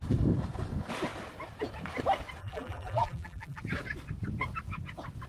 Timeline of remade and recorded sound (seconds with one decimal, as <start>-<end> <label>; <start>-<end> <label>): 0.0-2.4 recorded; 2.4-3.6 remade; 3.6-5.3 recorded